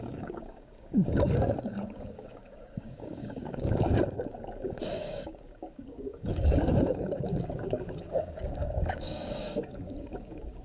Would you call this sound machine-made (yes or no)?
yes